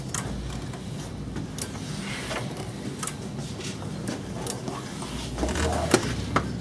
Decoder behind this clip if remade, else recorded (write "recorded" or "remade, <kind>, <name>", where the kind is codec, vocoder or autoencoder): recorded